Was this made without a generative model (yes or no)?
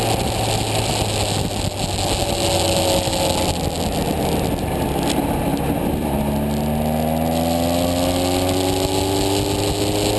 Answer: yes